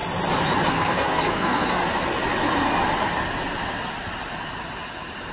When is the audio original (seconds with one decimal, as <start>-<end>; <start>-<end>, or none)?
0.0-0.7; 1.8-5.3